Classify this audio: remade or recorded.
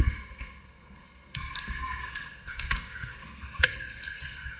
remade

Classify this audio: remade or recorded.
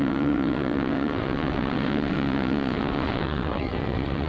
remade